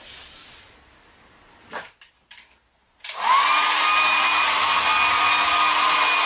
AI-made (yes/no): no